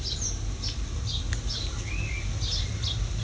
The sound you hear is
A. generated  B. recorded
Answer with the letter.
B